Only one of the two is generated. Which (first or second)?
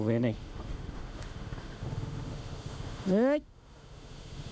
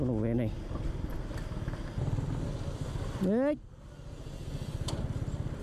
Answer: first